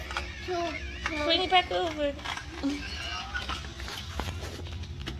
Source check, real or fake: real